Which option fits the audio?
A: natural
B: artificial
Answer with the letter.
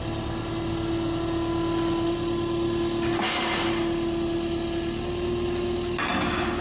A